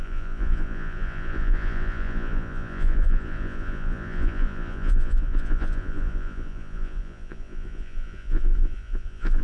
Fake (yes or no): yes